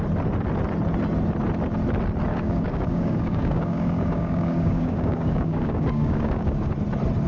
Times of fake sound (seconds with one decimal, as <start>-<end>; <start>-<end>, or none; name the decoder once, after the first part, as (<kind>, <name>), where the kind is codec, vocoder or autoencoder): 2.3-6.7 (codec, DAC)